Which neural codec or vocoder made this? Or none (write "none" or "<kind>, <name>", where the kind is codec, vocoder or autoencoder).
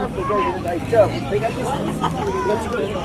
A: codec, DAC